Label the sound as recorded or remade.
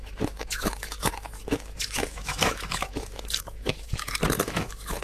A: remade